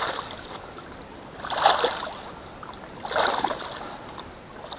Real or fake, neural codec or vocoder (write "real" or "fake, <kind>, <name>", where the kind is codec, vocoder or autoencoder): fake, vocoder, BigVGAN v2